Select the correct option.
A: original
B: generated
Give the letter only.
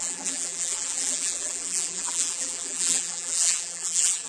B